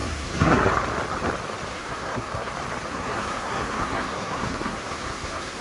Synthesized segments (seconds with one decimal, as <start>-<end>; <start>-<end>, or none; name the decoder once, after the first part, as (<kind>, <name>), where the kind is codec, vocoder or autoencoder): 0.0-0.7 (codec, SNAC); 1.7-2.5; 2.9-5.6